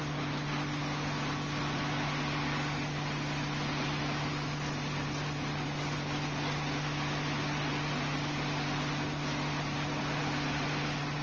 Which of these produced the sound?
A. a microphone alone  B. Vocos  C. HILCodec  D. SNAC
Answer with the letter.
A